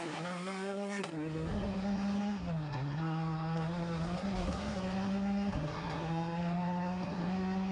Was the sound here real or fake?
fake